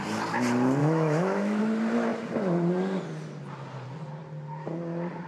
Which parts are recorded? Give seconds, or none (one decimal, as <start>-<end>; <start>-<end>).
0.0-0.8; 1.6-5.3